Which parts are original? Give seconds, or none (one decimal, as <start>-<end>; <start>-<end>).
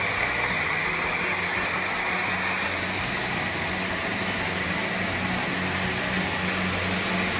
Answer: 0.0-7.4